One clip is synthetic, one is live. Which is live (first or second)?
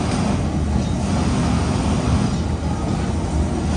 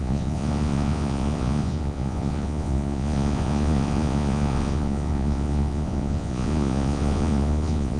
first